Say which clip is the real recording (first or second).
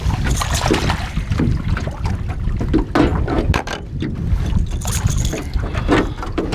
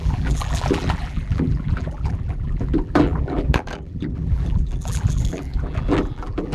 first